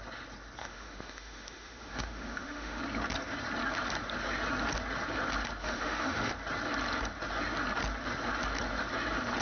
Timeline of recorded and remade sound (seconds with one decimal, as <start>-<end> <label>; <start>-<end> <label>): 0.0-0.6 recorded; 0.6-2.8 remade; 2.8-5.6 recorded; 5.6-6.3 remade; 6.3-9.4 recorded